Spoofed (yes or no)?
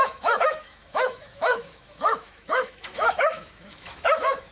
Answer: yes